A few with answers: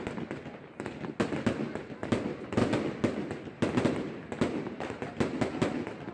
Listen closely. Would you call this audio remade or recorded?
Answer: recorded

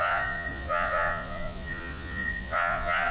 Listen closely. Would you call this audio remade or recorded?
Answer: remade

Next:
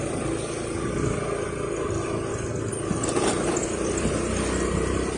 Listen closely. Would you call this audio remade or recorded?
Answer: recorded